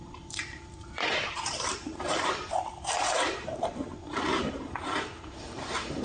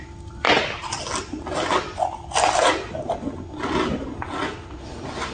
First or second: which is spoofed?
first